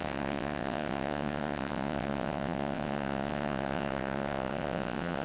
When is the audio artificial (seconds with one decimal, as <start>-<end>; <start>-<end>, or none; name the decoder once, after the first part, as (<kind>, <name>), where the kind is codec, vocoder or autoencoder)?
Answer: 0.0-5.2 (vocoder, WaveNeXt)